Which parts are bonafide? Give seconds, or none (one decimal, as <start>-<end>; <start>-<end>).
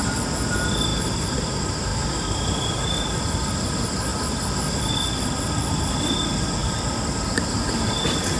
0.0-0.9; 1.5-6.6